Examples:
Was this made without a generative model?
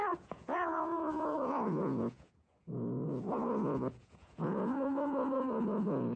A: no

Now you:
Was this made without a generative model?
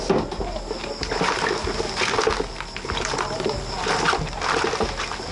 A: yes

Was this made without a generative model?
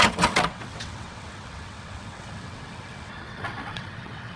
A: no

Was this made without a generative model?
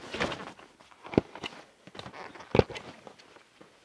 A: yes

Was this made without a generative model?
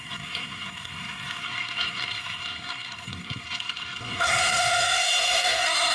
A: no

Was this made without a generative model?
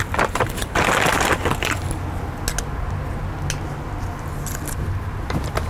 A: yes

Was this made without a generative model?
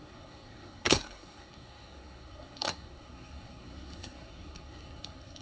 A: no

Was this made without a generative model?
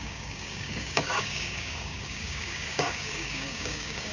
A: no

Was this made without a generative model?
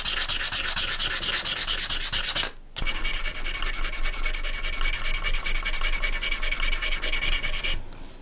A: yes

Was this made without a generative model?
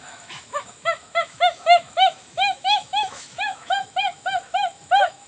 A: no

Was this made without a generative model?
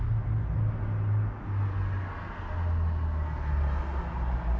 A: yes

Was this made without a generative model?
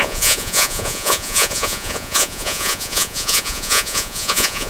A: no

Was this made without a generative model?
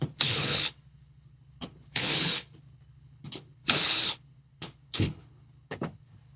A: no